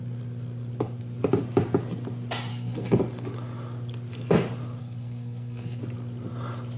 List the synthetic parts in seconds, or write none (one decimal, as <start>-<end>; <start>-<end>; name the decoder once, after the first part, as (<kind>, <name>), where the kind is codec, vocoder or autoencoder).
2.5-3.0 (codec, SNAC); 4.8-5.8